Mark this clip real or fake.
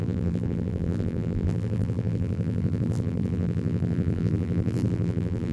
fake